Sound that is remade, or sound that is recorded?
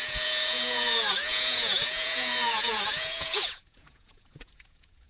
remade